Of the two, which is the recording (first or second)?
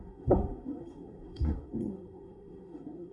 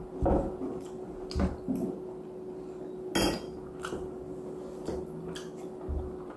second